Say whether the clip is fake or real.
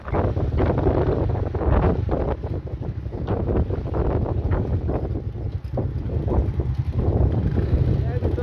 real